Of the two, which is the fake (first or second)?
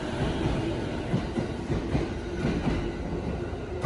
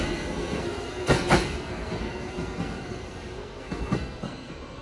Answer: second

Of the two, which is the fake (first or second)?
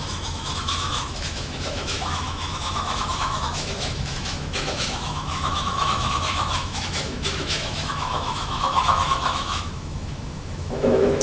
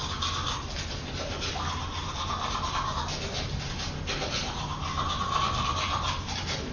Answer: first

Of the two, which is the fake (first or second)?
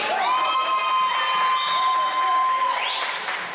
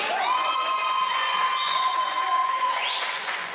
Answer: second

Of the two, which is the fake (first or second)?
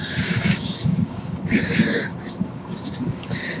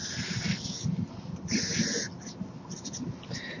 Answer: first